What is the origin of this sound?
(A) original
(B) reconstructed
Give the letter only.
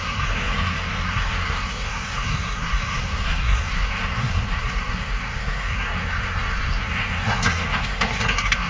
B